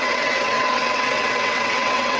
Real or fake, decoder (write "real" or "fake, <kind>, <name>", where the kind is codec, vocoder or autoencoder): fake, vocoder, WaveNeXt